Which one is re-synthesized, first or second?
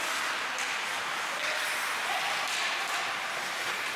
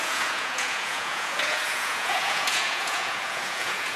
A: second